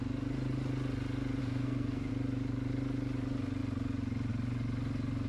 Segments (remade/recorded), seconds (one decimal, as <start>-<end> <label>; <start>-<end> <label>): 0.0-1.4 recorded; 1.4-2.1 remade; 2.1-5.3 recorded